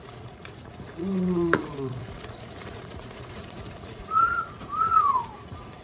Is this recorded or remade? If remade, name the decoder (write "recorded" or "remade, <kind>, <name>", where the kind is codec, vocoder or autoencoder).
remade, vocoder, Vocos